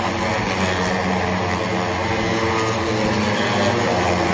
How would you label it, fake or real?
real